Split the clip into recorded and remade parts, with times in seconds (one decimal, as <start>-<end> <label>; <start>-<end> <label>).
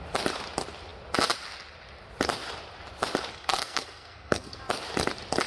0.0-3.3 recorded; 3.3-4.6 remade; 4.6-5.5 recorded